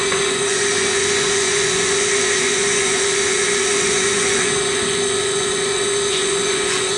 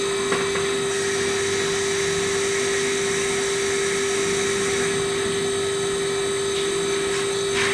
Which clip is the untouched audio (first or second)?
second